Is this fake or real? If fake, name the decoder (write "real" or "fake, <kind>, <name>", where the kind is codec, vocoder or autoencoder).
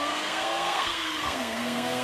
fake, codec, SNAC